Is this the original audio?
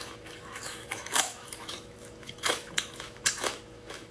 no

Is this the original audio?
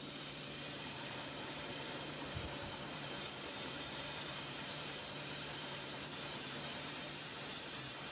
no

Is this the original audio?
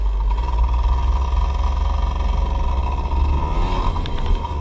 yes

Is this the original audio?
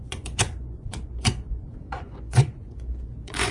no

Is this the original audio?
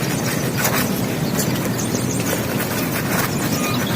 yes